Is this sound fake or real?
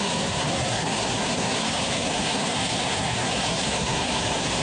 fake